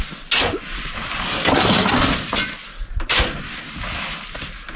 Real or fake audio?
real